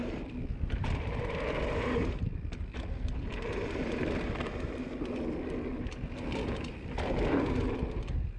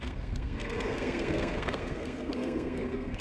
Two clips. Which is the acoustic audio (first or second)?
first